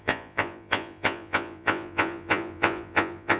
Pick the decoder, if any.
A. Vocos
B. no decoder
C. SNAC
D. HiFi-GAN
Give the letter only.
A